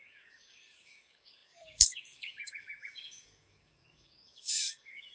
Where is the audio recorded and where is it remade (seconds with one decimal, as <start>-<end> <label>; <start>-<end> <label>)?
0.0-5.1 remade